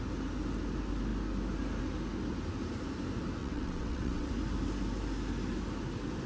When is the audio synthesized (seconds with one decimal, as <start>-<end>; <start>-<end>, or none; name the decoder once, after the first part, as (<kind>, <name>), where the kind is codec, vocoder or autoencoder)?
3.4-4.3 (vocoder, WaveNeXt)